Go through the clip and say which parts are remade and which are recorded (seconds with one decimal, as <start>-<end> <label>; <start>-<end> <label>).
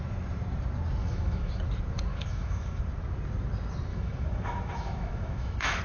0.0-1.0 recorded; 1.0-1.5 remade; 1.5-2.1 recorded; 2.1-2.8 remade; 2.8-3.9 recorded; 3.9-5.8 remade